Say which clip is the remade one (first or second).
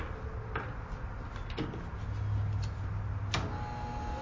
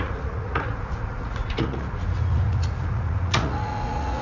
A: second